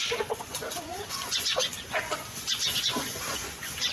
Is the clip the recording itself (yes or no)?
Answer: no